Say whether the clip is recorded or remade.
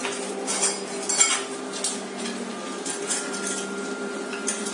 recorded